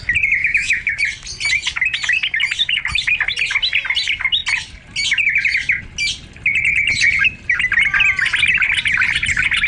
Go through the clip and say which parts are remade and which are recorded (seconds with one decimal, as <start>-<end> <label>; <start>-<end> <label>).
0.0-0.4 recorded; 0.4-1.0 remade; 1.0-9.7 recorded